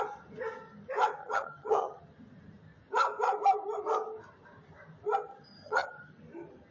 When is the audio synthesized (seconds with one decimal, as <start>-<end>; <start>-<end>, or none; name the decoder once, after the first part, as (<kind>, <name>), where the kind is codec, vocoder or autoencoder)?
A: 1.2-2.0 (vocoder, HiFi-GAN); 5.3-6.2